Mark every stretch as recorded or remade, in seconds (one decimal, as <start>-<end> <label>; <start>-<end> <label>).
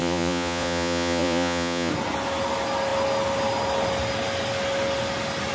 0.0-1.9 remade; 1.9-5.5 recorded